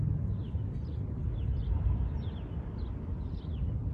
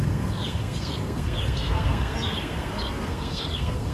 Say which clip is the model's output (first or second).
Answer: second